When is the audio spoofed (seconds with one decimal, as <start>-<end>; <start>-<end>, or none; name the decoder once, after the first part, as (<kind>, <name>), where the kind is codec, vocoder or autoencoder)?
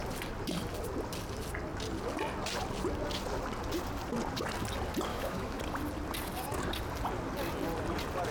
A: 5.1-5.6 (autoencoder, DAC-VAE)